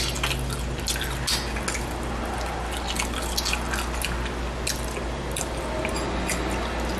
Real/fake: real